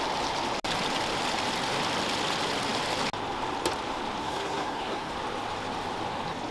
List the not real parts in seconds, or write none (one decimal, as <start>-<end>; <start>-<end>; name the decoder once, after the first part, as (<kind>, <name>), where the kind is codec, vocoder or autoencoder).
4.2-5.1 (codec, SNAC)